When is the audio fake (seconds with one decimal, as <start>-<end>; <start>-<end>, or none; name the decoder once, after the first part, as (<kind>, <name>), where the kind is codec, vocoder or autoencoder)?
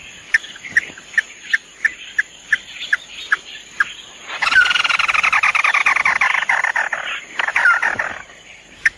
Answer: none